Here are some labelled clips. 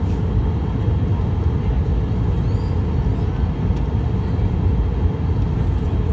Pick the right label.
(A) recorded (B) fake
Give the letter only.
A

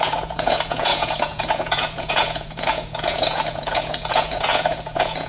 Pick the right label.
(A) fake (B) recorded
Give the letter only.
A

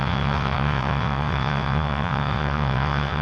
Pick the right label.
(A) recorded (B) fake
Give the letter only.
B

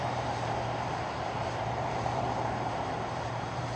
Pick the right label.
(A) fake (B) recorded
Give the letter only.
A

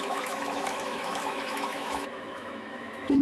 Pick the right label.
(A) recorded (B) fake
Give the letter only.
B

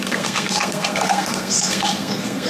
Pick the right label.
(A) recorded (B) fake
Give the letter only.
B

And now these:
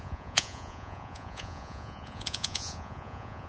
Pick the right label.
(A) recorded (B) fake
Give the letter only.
B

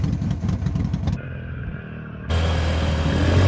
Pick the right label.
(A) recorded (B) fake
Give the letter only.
A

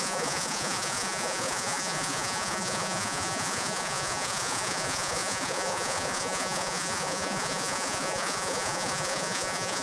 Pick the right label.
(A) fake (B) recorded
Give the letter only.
A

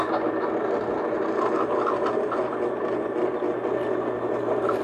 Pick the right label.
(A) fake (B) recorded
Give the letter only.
B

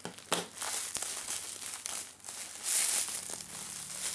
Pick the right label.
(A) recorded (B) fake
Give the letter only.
A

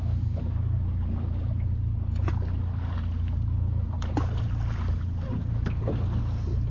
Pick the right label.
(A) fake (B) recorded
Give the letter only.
B